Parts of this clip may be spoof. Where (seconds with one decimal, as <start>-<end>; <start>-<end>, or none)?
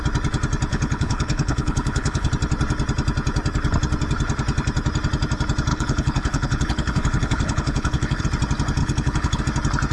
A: 0.7-2.3; 5.7-8.2; 8.8-9.4